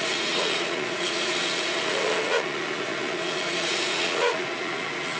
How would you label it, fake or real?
fake